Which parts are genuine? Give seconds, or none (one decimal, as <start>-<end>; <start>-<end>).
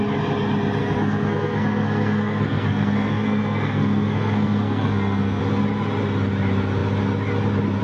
0.0-0.8; 5.4-7.8